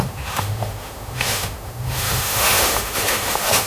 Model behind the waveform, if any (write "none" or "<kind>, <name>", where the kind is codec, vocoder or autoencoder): autoencoder, DAC-VAE